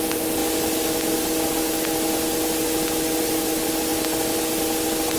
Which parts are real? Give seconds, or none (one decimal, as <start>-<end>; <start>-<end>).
0.0-5.2